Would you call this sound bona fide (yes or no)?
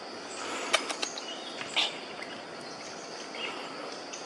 yes